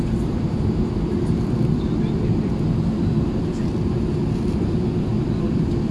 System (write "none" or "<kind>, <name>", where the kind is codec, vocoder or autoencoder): none